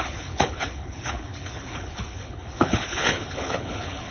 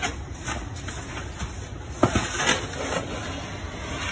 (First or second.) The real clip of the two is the second